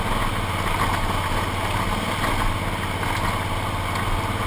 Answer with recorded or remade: recorded